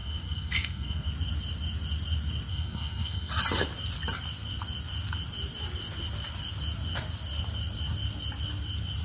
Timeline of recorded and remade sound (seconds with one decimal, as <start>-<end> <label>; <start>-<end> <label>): 0.0-1.1 remade; 1.1-2.5 recorded; 2.5-3.3 remade; 3.3-9.0 recorded